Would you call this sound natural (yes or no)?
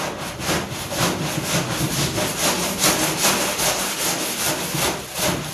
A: yes